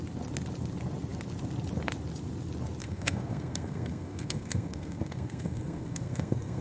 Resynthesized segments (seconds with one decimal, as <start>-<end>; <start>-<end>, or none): 2.8-6.6

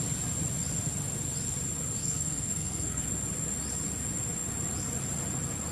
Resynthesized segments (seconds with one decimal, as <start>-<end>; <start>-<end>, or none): 2.0-3.1